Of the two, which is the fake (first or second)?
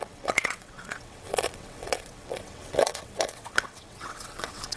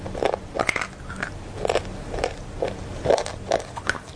first